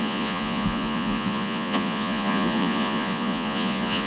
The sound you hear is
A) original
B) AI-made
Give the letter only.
B